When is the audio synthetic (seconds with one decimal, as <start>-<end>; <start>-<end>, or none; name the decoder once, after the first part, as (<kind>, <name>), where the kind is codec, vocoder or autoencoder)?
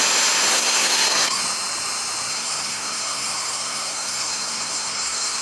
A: 0.5-1.4 (codec, SNAC); 2.3-5.4